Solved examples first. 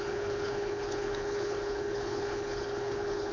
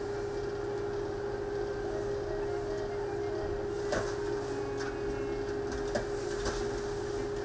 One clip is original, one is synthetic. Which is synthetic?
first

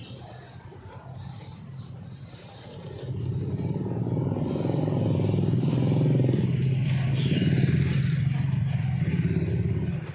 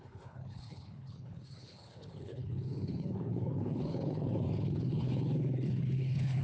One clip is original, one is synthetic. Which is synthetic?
second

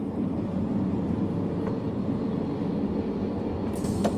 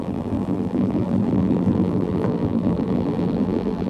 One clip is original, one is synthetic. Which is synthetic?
second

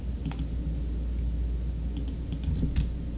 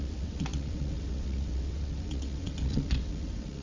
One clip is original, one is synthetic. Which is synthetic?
second